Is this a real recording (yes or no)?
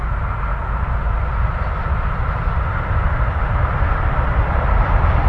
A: yes